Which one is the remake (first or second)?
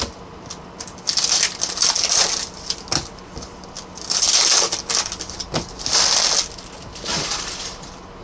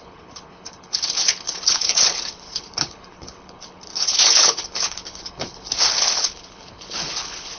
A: second